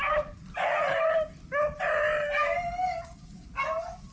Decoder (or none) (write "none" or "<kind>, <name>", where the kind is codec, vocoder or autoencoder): none